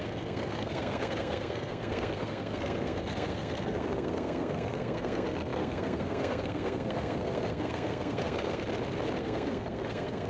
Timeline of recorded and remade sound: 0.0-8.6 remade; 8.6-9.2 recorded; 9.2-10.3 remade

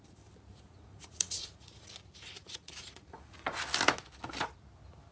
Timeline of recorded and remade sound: 0.0-0.5 recorded; 0.5-1.9 remade; 1.9-2.4 recorded; 2.4-3.6 remade; 3.6-5.1 recorded

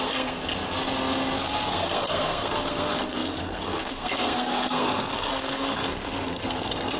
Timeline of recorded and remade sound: 0.0-0.4 remade; 0.4-1.7 recorded; 1.7-7.0 remade

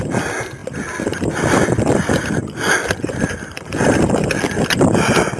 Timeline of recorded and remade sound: 0.0-5.4 recorded

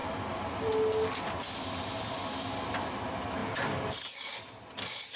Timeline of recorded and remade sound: 0.0-5.2 recorded